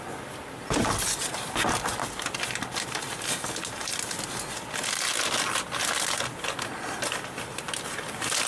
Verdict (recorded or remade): recorded